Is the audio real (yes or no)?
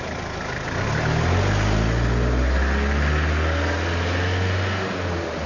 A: yes